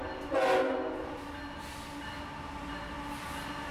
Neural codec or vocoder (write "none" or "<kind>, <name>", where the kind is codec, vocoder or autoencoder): none